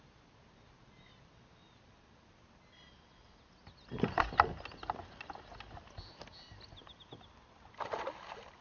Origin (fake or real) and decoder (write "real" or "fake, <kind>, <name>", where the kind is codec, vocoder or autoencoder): real